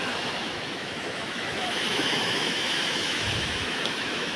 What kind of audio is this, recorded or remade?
remade